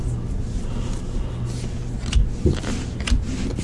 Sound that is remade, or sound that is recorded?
recorded